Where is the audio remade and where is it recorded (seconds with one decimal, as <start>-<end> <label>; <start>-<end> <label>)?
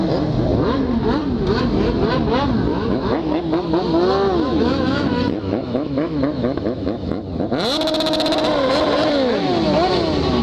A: 0.0-2.7 recorded; 2.7-3.4 remade; 3.4-4.5 recorded; 4.5-7.2 remade; 7.2-10.4 recorded